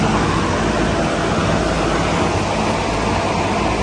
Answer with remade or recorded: recorded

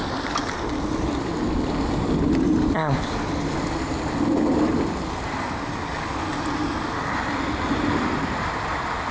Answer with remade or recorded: recorded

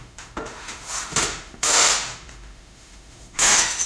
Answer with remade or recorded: remade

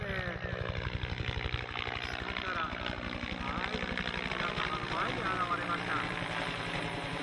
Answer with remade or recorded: recorded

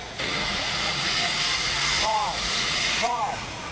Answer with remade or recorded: remade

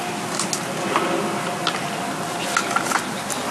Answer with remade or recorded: recorded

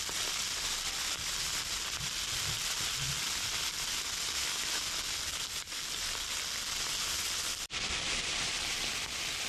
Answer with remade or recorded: recorded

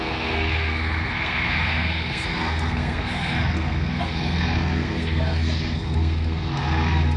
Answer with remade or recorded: remade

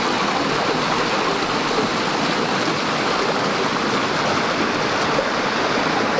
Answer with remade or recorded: recorded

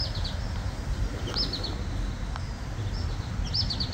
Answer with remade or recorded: recorded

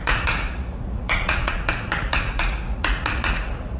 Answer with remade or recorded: remade